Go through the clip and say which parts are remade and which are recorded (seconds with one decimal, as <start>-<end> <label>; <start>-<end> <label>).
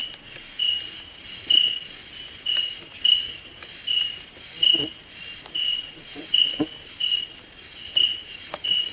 0.0-0.6 remade; 0.6-5.7 recorded; 5.7-6.6 remade; 6.6-8.9 recorded